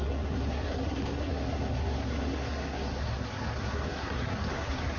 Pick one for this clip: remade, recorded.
remade